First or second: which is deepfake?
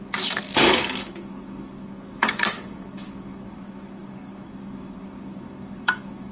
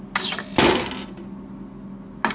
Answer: first